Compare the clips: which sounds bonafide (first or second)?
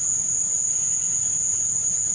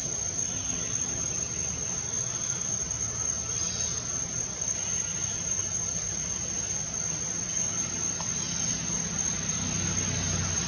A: second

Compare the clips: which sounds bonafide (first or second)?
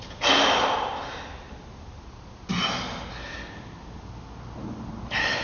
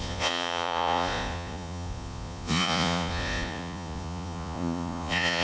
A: first